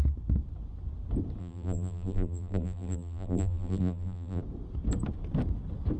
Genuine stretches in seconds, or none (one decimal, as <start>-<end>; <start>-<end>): 0.0-1.4; 4.4-6.0

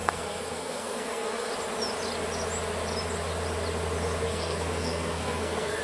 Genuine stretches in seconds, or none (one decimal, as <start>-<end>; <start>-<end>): 1.5-4.3

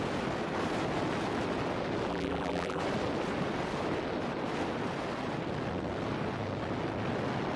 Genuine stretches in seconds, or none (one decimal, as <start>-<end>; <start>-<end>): 0.0-2.1; 2.8-7.6

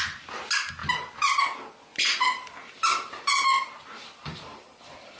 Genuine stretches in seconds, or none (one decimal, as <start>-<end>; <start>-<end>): 0.0-0.8; 1.4-1.9

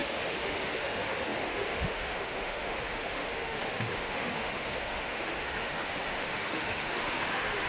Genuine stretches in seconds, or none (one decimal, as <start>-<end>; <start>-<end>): none